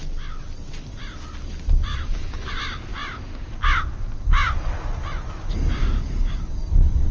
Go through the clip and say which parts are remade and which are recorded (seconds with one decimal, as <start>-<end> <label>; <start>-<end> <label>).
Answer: 0.0-1.9 recorded; 1.9-2.5 remade; 2.5-5.8 recorded; 5.8-6.4 remade; 6.4-7.1 recorded

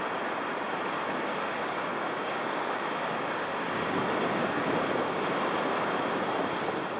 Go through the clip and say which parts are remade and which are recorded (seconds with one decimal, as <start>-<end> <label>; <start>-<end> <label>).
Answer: 0.0-1.3 recorded; 1.3-5.4 remade; 5.4-7.0 recorded

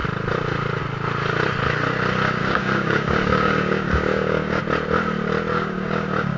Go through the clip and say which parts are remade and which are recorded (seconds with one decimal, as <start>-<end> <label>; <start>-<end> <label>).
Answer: 0.0-2.4 recorded; 2.4-4.6 remade; 4.6-5.5 recorded; 5.5-6.4 remade

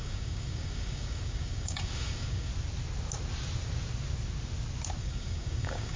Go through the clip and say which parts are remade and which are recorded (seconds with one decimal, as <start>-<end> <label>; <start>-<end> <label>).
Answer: 0.0-2.5 remade; 2.5-5.0 recorded; 5.0-6.0 remade

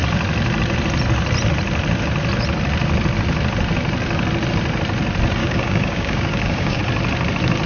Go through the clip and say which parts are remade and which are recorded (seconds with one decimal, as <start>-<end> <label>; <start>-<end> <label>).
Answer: 0.0-5.4 recorded; 5.4-6.8 remade; 6.8-7.7 recorded

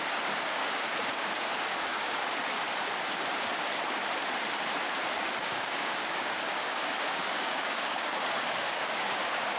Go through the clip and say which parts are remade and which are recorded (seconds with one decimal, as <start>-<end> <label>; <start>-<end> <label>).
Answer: 0.0-2.2 remade; 2.2-5.4 recorded; 5.4-9.6 remade

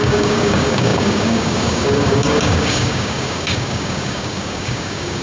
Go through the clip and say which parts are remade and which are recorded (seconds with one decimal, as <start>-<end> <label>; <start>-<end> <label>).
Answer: 0.0-5.2 remade

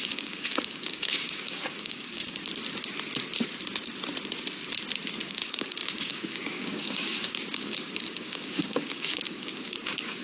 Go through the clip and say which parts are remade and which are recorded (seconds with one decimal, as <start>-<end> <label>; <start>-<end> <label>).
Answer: 0.0-2.4 remade; 2.4-5.3 recorded; 5.3-10.2 remade